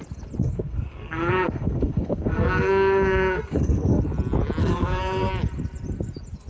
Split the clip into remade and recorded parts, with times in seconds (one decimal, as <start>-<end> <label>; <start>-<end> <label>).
0.0-0.4 recorded; 0.4-4.0 remade; 4.0-4.6 recorded; 4.6-5.3 remade; 5.3-6.5 recorded